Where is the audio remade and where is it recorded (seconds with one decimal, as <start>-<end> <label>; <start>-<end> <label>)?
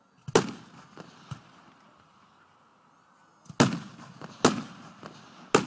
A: 0.0-5.7 recorded